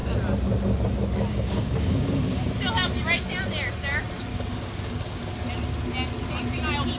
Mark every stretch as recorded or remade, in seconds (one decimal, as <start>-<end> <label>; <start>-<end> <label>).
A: 0.0-1.3 recorded; 1.3-2.5 remade; 2.5-4.3 recorded; 4.3-5.3 remade; 5.3-7.0 recorded